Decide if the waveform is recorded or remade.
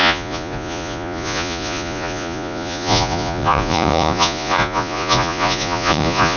remade